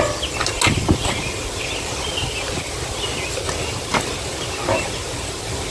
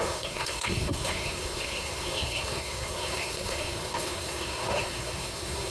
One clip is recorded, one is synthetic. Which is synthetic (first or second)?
second